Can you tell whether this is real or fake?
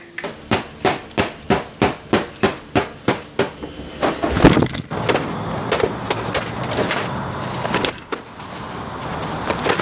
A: real